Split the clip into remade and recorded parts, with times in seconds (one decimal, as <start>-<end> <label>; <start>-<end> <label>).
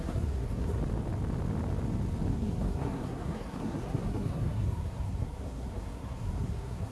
0.0-0.8 remade; 0.8-2.3 recorded; 2.3-6.9 remade